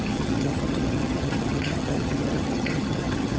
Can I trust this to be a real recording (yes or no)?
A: no